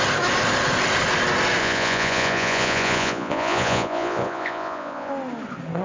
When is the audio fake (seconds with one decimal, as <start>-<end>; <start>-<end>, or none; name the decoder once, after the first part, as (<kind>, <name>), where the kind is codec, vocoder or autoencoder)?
1.6-5.1 (vocoder, Vocos)